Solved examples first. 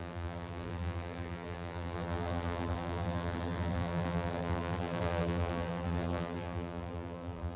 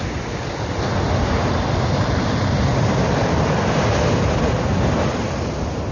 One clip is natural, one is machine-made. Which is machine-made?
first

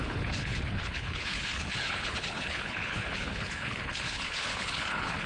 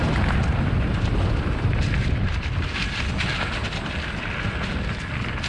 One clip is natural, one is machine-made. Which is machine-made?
first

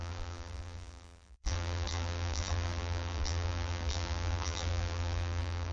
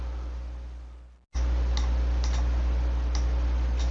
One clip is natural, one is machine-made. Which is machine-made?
first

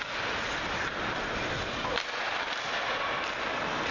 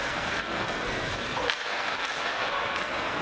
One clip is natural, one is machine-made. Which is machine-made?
second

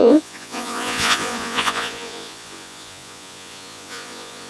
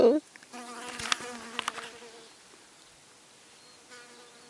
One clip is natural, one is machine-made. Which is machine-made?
first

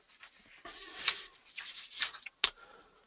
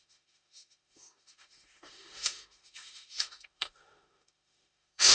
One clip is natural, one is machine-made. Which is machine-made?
second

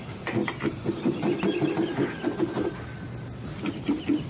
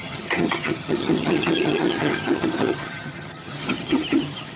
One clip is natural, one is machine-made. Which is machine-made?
second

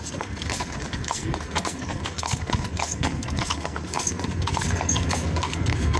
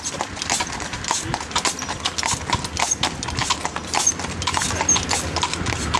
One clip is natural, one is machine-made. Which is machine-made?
first